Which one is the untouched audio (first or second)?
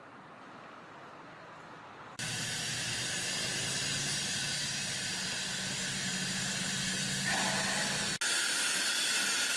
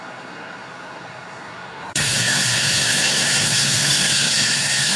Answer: first